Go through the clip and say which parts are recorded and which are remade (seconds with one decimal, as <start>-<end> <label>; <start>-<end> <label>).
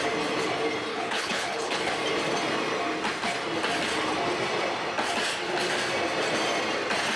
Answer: 0.0-0.9 recorded; 0.9-1.8 remade; 1.8-7.2 recorded